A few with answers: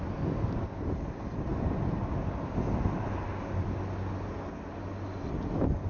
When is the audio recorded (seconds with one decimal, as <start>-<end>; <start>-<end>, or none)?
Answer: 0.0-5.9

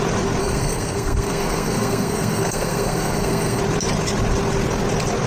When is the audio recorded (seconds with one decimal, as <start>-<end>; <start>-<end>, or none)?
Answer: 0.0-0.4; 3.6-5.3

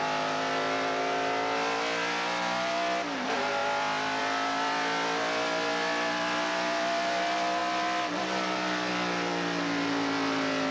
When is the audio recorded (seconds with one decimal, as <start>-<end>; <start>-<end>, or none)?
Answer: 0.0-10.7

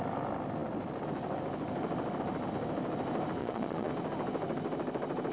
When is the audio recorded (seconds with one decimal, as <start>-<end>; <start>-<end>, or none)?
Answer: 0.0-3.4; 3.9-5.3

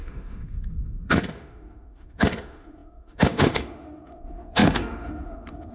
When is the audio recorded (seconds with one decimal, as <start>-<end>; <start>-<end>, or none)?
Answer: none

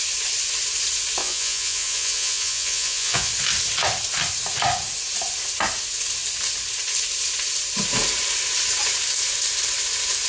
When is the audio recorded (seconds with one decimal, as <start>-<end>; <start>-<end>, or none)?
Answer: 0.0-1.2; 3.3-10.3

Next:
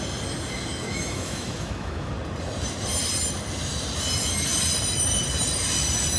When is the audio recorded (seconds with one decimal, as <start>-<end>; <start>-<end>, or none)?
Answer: 0.0-0.8; 2.1-6.2